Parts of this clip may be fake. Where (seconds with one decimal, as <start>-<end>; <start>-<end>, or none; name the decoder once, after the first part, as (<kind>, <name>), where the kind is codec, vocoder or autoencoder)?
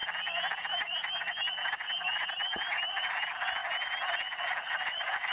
none